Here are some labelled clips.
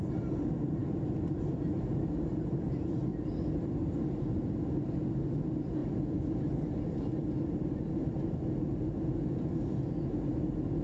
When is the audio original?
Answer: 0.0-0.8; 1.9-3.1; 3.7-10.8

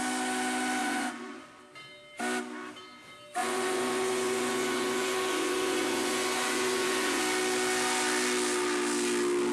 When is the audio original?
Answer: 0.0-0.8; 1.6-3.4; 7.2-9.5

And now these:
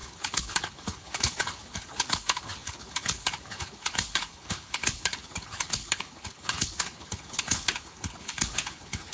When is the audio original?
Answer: none